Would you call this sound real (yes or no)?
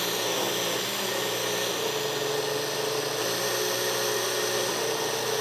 yes